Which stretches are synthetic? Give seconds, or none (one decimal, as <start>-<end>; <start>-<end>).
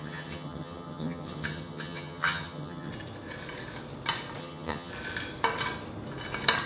0.0-2.9; 4.4-4.9